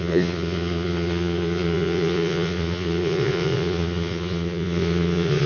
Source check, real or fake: fake